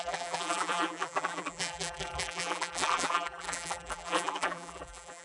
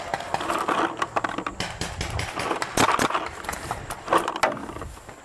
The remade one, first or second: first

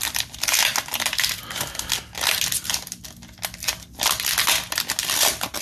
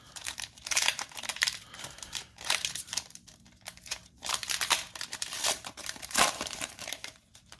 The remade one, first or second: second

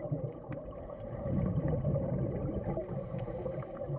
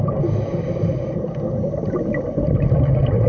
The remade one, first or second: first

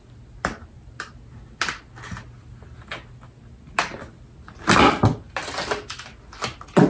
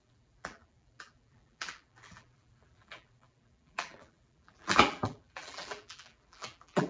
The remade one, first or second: second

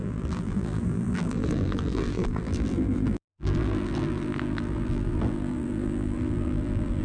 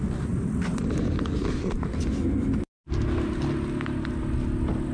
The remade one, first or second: first